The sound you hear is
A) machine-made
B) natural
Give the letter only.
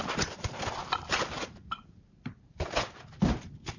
B